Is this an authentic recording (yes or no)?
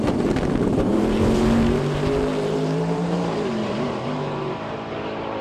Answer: no